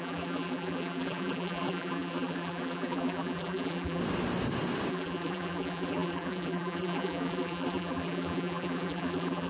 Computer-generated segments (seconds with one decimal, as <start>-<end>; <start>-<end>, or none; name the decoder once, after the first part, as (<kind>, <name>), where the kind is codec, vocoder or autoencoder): 0.0-4.0 (vocoder, BigVGAN v2); 4.9-9.5